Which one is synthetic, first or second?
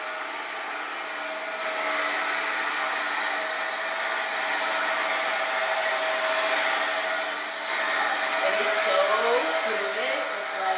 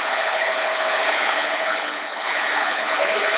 second